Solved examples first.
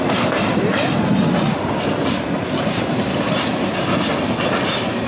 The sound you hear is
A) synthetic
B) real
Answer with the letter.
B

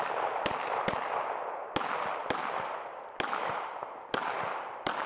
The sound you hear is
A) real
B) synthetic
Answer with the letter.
A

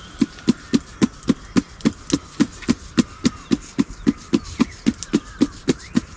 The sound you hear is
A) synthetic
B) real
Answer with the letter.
B